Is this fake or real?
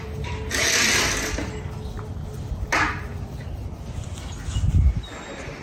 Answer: real